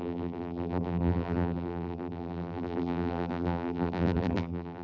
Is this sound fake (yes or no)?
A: yes